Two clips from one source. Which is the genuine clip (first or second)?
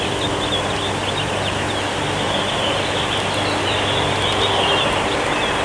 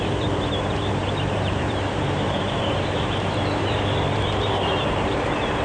first